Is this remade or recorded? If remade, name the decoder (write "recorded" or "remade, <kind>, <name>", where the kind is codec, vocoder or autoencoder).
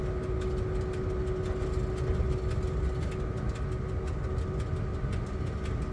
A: recorded